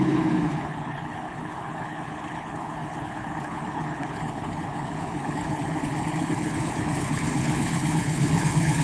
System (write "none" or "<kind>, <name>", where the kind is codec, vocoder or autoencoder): codec, HILCodec